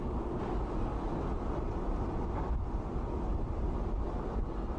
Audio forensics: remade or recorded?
recorded